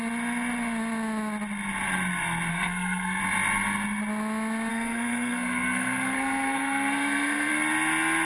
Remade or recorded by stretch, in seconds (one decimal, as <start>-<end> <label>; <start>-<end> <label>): 0.0-2.5 recorded; 2.5-3.2 remade; 3.2-4.7 recorded; 4.7-7.5 remade; 7.5-8.2 recorded